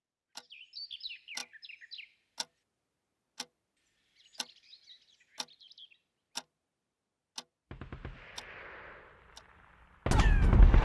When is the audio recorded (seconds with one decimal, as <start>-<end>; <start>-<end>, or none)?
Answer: 0.0-10.8